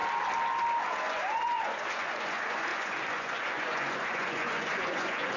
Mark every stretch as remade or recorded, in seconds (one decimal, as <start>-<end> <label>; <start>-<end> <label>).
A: 0.0-0.8 recorded; 0.8-5.4 remade